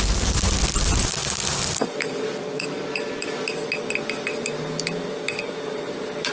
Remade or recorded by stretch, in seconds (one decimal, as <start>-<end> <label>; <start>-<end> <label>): 0.0-6.3 recorded